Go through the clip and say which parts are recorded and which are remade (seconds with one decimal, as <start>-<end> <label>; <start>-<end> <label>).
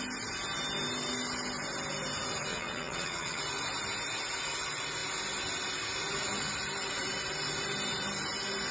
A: 0.0-2.5 recorded; 2.5-3.4 remade; 3.4-8.7 recorded